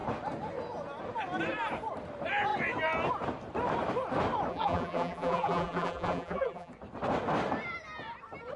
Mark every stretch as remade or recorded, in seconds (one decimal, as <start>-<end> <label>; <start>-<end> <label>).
0.0-4.5 recorded; 4.5-6.7 remade; 6.7-8.6 recorded